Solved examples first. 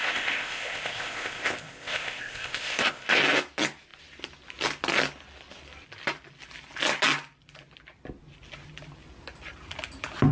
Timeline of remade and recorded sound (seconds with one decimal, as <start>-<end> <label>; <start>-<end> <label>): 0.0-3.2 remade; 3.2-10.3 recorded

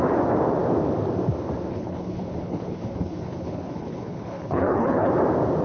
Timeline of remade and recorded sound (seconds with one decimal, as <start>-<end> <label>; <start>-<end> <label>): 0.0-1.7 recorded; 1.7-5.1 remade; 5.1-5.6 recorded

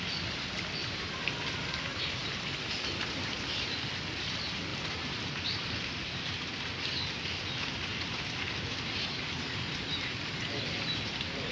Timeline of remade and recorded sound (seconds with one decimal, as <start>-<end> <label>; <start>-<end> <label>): 0.0-0.8 recorded; 0.8-1.3 remade; 1.3-4.7 recorded; 4.7-6.4 remade; 6.4-11.5 recorded